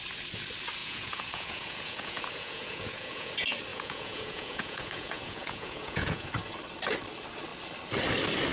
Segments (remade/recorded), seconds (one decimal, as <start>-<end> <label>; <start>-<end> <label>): 0.0-0.8 recorded; 0.8-3.3 remade; 3.3-3.7 recorded; 3.7-6.3 remade; 6.3-8.5 recorded